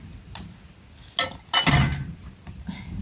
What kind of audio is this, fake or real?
real